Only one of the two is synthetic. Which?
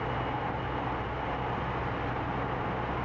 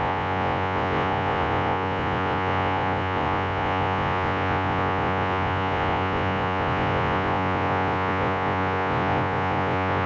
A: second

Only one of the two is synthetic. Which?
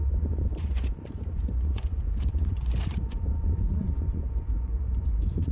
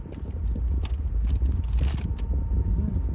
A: first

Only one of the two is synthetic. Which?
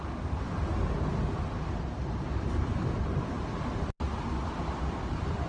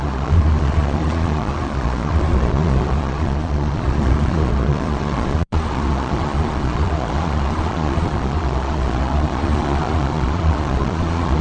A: second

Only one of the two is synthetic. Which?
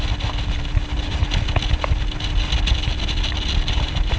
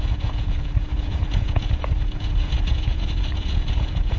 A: second